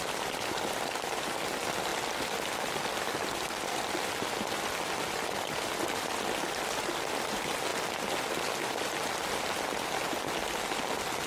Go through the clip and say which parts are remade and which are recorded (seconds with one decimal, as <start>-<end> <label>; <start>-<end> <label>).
0.0-11.3 recorded